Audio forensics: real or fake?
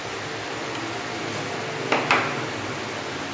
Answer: real